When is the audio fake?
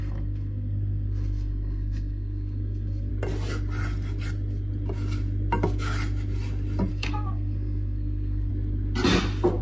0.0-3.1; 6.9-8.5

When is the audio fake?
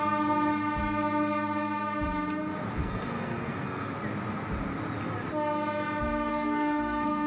2.8-3.9; 6.3-7.3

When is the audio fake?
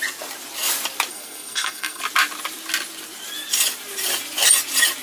1.1-2.0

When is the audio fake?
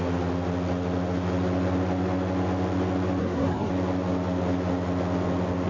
3.2-3.7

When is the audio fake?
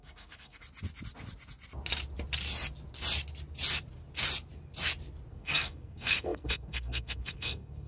0.0-0.6; 5.3-7.9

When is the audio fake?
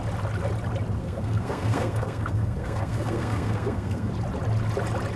1.0-4.1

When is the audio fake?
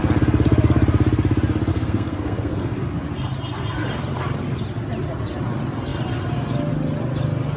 1.7-2.8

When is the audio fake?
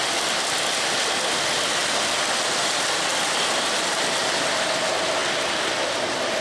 none